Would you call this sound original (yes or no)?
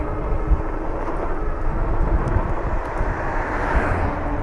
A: yes